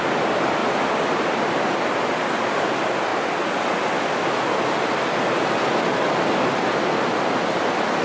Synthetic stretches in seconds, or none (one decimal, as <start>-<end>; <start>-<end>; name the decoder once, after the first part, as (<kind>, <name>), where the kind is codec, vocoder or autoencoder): none